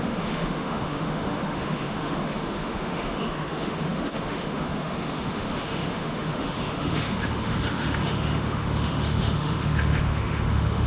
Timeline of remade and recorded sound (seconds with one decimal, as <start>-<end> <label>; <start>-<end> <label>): 0.0-10.9 remade

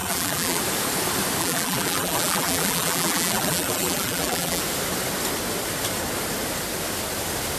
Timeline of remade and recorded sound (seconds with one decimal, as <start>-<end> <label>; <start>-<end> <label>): 0.0-0.6 remade; 0.6-1.4 recorded; 1.4-4.6 remade; 4.6-7.6 recorded

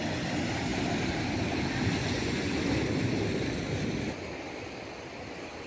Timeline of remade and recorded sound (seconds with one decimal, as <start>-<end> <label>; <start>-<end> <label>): 0.0-2.0 recorded; 2.0-2.5 remade; 2.5-5.7 recorded